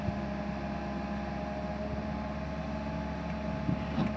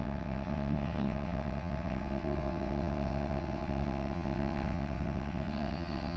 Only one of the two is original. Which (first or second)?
first